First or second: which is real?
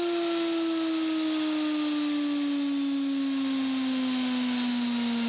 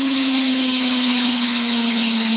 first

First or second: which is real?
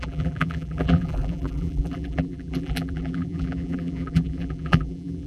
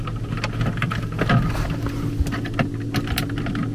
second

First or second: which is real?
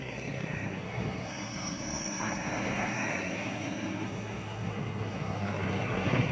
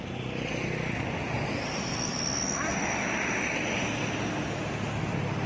second